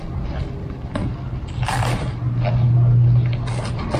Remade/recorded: recorded